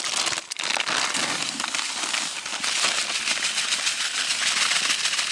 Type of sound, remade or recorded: recorded